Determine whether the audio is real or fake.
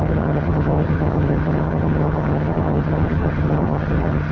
fake